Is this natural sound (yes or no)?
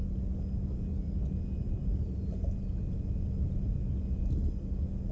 yes